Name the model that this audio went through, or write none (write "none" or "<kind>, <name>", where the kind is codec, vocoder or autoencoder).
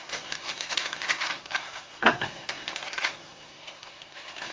codec, SNAC